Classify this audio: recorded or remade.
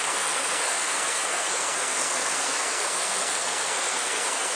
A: remade